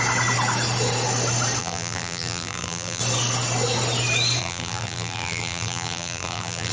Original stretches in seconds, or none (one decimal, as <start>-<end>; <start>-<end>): 0.0-1.6; 3.0-4.4